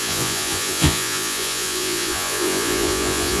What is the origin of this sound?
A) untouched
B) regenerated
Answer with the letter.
B